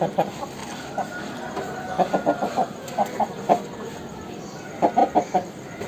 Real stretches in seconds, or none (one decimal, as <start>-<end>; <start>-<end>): 0.0-5.9